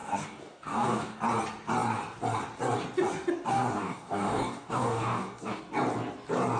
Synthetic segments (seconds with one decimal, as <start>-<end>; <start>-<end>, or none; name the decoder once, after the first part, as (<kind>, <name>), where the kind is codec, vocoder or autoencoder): 0.0-1.2 (codec, DAC); 3.5-5.6